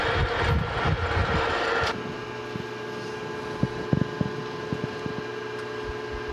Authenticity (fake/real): real